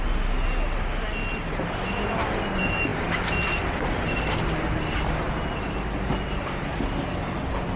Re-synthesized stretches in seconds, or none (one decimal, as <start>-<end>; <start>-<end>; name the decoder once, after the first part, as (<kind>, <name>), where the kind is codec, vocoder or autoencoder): none

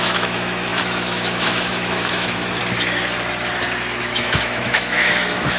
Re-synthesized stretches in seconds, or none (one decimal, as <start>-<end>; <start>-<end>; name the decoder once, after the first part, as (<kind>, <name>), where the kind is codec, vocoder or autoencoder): 0.0-2.6 (autoencoder, DAC-VAE); 4.0-5.6

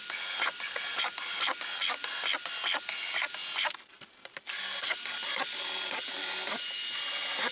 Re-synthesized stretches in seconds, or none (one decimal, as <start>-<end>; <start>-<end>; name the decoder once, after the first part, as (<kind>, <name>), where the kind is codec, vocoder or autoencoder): none

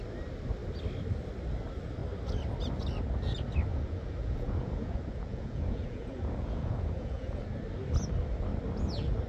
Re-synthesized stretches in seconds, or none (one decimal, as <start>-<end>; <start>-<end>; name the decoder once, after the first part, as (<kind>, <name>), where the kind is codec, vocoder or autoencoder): 3.7-7.4 (vocoder, Vocos)

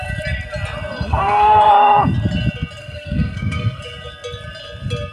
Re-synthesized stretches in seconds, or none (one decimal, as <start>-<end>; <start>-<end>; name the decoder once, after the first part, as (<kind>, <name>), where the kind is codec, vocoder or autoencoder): 1.1-1.7 (codec, SNAC); 2.8-3.8

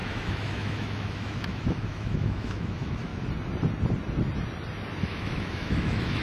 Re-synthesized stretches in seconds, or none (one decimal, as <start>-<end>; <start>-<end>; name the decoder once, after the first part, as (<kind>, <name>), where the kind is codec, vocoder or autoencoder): 0.0-3.1 (autoencoder, DAC-VAE); 5.0-6.2

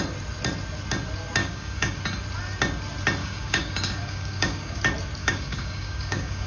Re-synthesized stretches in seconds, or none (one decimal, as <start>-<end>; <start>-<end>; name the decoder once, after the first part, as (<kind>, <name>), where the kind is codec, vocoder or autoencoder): 1.4-2.0 (codec, DAC); 3.2-4.8; 5.2-6.5